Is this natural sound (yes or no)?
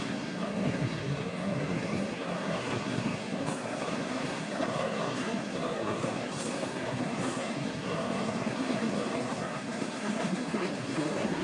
no